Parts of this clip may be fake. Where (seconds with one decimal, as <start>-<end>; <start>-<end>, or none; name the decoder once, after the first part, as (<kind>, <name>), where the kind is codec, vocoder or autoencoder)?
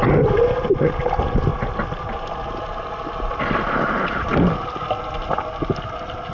none